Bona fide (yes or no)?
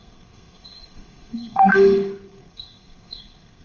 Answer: no